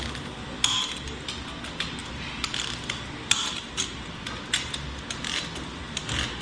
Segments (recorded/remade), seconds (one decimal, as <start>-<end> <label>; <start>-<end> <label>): 0.0-6.4 recorded